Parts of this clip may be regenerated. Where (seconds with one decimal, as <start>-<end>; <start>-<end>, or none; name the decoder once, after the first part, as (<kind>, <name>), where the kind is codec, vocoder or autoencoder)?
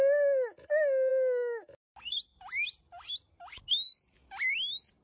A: none